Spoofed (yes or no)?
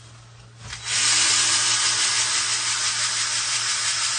no